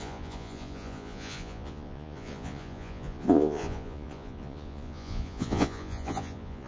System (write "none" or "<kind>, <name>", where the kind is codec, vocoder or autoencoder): vocoder, Vocos